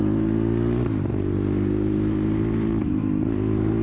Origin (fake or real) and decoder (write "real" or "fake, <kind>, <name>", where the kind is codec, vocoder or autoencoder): fake, vocoder, BigVGAN v2